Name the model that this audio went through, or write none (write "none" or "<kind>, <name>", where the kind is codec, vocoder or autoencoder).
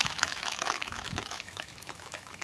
autoencoder, DAC-VAE